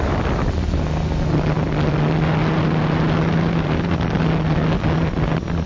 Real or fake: real